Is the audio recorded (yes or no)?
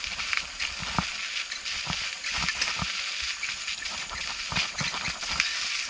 yes